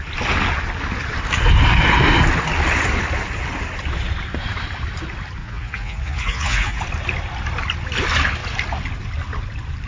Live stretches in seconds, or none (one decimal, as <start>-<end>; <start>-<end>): 0.0-5.4; 6.8-9.9

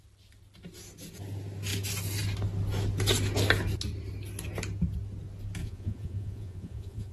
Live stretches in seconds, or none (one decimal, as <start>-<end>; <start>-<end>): 0.0-5.6

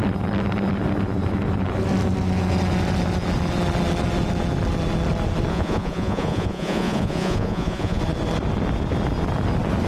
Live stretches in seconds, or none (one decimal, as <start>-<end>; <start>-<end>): 0.0-5.5; 8.0-9.9

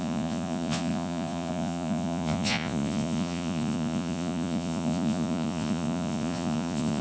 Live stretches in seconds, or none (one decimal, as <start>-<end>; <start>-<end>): none

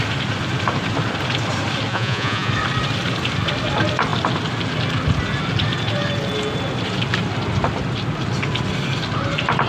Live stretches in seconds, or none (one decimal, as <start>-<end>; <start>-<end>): 0.0-1.9; 2.5-9.7

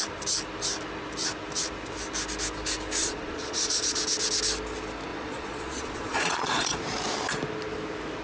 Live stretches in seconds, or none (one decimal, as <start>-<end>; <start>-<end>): 0.0-3.0; 4.0-5.1; 6.8-8.2